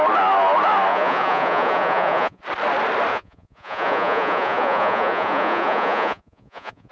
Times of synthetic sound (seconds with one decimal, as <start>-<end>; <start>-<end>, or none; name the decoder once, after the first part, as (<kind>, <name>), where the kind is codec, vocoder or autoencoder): 0.9-2.4 (vocoder, Vocos); 3.1-6.9